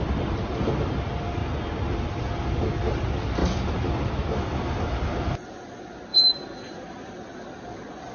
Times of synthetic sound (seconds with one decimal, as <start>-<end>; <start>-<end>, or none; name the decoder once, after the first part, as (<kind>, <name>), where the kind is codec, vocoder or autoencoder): 1.4-2.2 (vocoder, BigVGAN v2); 3.4-5.4; 6.1-7.1